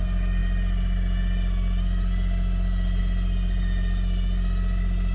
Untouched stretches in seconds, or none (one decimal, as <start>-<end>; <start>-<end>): 0.0-5.1